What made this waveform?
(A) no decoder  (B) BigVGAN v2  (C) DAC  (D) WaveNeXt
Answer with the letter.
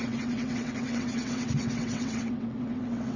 D